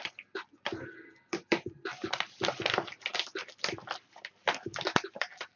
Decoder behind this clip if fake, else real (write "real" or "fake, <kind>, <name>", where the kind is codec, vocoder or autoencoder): fake, vocoder, BigVGAN v2